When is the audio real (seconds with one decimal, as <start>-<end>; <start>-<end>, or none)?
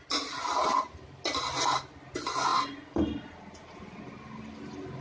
0.0-5.0